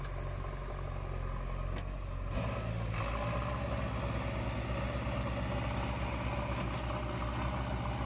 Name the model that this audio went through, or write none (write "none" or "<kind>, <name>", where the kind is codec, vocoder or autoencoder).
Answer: none